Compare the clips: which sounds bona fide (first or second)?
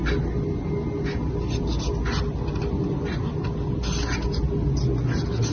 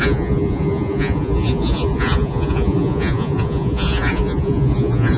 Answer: first